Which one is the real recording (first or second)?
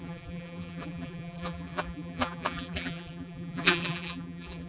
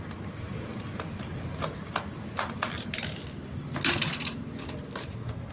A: second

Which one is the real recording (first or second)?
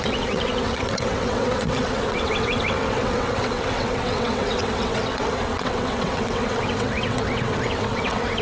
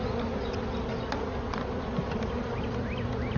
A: second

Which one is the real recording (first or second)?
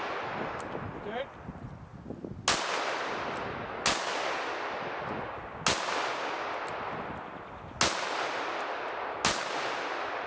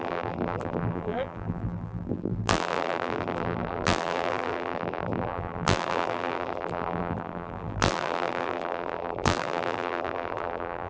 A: first